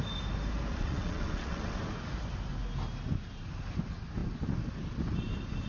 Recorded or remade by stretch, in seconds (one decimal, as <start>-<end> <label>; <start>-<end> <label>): 0.0-0.7 recorded; 0.7-1.8 remade; 1.8-5.7 recorded